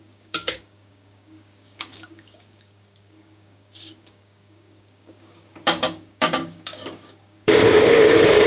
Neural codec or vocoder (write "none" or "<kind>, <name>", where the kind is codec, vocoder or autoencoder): codec, DAC